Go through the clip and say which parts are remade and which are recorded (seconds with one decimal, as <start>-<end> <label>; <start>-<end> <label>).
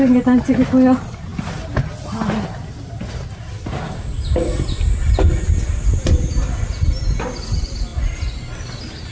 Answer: 0.0-9.1 recorded